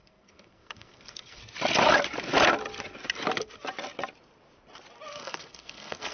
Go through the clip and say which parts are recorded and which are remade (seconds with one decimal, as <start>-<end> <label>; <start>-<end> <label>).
0.0-1.4 remade; 1.4-5.1 recorded; 5.1-6.1 remade